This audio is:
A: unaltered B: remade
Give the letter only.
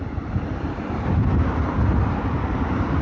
A